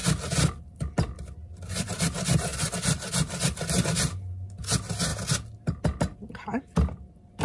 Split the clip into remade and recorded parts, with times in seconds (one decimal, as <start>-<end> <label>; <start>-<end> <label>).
0.0-7.4 recorded